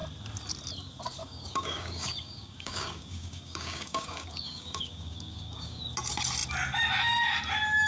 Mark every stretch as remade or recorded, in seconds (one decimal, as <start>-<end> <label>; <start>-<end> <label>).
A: 0.0-1.2 recorded; 1.2-5.8 remade; 5.8-7.9 recorded